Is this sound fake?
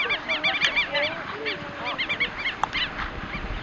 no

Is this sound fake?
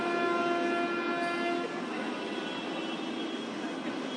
no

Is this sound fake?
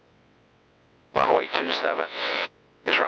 yes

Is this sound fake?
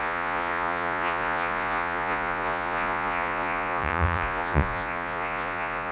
yes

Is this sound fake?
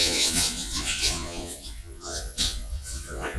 yes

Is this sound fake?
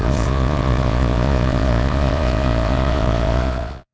yes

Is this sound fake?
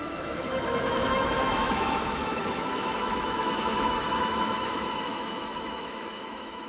yes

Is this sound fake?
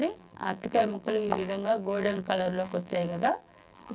yes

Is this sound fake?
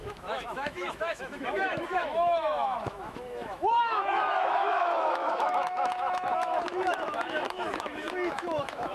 yes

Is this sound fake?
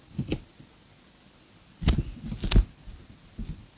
no